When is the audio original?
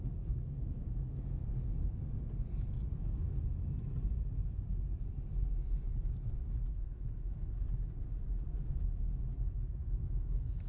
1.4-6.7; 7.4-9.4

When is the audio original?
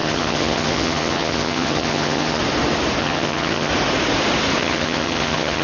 2.4-3.0; 3.7-4.6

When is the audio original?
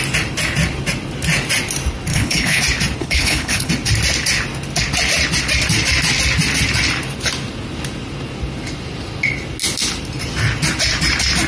0.0-2.1; 2.6-3.0; 3.7-11.5